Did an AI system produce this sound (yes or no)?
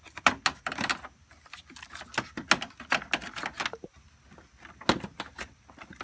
no